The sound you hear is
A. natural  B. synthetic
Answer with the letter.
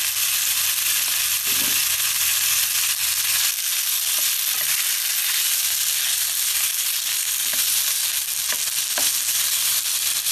A